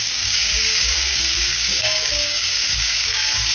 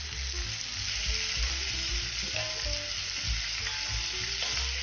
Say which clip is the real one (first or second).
second